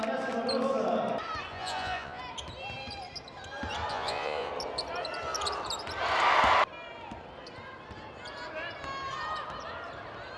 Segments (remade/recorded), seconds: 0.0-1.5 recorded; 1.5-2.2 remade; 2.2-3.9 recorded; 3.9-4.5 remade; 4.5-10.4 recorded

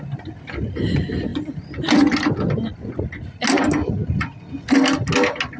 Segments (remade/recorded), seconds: 0.0-5.6 recorded

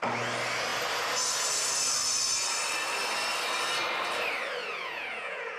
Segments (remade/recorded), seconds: 0.0-4.6 recorded; 4.6-5.6 remade

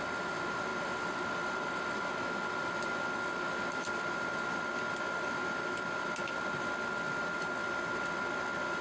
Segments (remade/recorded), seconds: 0.0-8.8 recorded

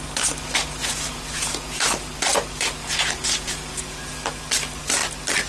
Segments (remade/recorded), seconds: 0.0-0.8 recorded; 0.8-1.9 remade; 1.9-2.8 recorded; 2.8-4.0 remade; 4.0-5.5 recorded

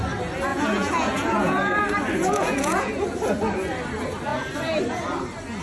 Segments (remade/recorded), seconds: 0.0-0.5 recorded; 0.5-1.8 remade; 1.8-2.3 recorded; 2.3-2.9 remade; 2.9-5.6 recorded